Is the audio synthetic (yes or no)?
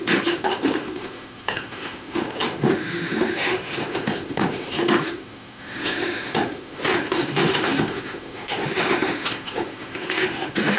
yes